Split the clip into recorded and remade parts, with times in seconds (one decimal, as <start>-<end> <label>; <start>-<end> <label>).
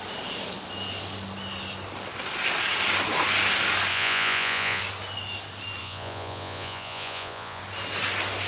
0.0-3.9 recorded; 3.9-4.8 remade; 4.8-5.8 recorded; 5.8-7.6 remade; 7.6-8.5 recorded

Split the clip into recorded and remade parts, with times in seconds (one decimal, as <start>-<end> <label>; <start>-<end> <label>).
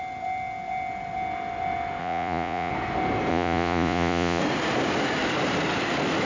0.0-2.0 recorded; 2.0-2.7 remade; 2.7-3.3 recorded; 3.3-4.4 remade; 4.4-6.3 recorded